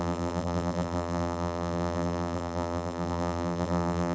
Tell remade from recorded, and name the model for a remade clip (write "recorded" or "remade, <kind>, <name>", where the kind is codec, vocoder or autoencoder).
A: remade, vocoder, BigVGAN v2